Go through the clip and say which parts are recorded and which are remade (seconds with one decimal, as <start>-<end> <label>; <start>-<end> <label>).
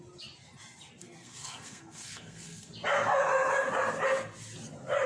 0.0-1.0 recorded; 1.0-2.7 remade; 2.7-5.1 recorded